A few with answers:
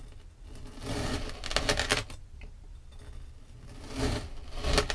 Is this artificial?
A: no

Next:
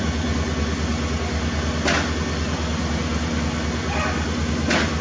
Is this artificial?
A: no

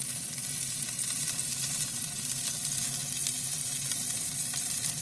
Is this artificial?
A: no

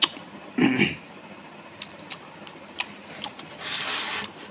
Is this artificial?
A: no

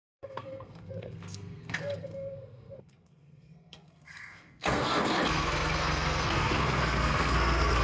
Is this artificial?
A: yes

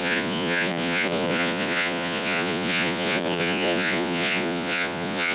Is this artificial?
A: yes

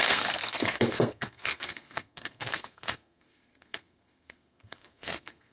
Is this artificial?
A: yes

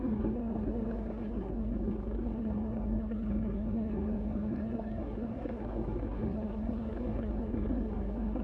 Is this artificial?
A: yes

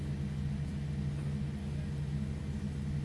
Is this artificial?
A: no